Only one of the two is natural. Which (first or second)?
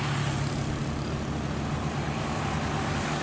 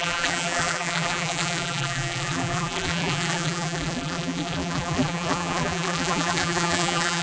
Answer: first